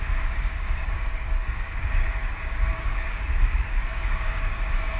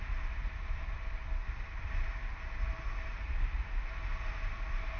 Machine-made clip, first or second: first